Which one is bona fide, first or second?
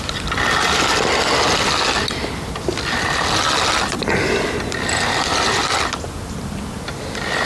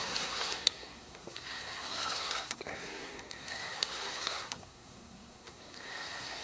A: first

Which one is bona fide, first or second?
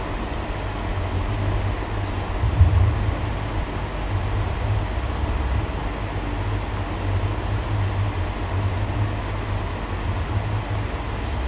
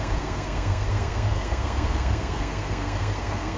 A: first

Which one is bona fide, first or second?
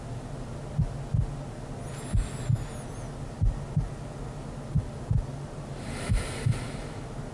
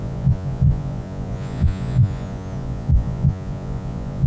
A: first